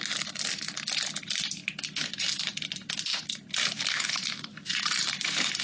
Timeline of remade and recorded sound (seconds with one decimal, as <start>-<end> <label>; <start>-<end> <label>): 0.0-3.1 recorded; 3.1-5.6 remade